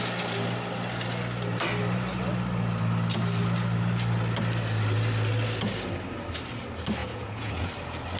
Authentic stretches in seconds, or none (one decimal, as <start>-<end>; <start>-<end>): 0.0-7.0; 7.7-8.2